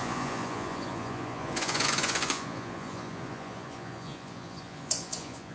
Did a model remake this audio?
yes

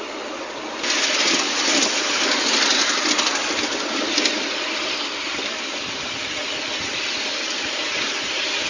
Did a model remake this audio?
no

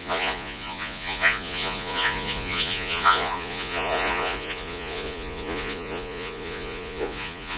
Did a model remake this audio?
yes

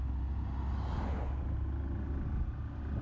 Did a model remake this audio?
no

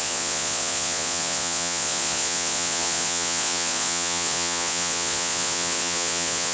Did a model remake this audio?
yes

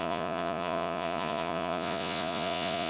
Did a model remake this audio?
yes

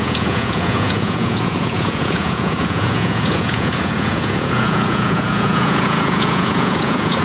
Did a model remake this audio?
yes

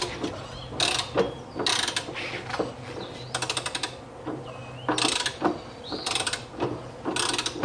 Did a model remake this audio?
no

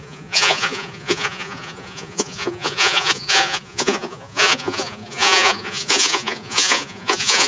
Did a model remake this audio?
yes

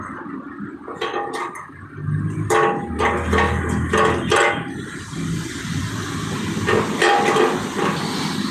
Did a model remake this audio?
no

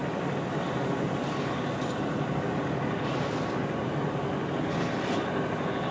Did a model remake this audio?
no